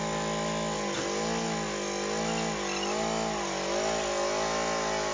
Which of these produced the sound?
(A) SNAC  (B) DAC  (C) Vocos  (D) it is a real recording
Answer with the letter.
D